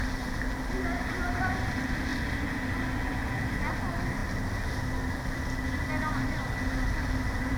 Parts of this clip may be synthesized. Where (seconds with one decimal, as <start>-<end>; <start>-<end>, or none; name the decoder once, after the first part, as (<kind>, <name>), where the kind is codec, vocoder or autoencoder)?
none